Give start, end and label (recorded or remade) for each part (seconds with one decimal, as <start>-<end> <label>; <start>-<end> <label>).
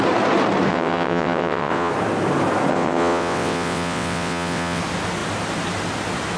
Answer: 0.0-0.7 recorded; 0.7-1.9 remade; 1.9-2.7 recorded; 2.7-4.8 remade; 4.8-6.4 recorded